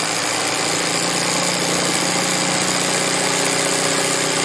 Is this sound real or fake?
real